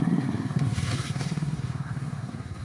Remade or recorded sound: remade